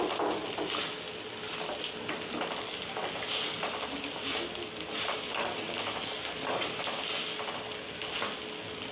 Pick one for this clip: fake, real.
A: real